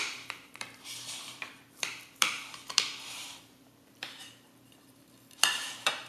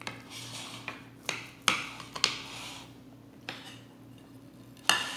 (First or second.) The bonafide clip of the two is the second